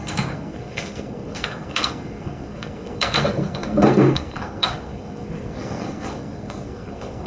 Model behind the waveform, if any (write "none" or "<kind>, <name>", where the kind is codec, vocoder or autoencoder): codec, SNAC